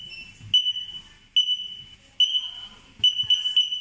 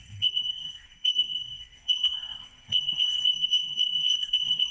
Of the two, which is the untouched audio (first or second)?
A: first